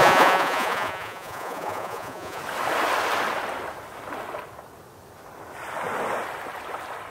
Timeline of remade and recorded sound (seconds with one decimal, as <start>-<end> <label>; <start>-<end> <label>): 0.0-2.4 remade; 2.4-7.1 recorded